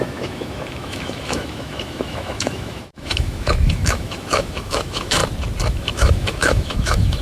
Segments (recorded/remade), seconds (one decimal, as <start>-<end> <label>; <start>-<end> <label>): 0.0-5.2 remade; 5.2-5.7 recorded; 5.7-7.2 remade